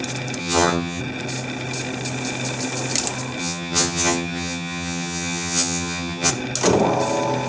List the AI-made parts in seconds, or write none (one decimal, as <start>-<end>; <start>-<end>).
0.4-1.0; 3.4-6.3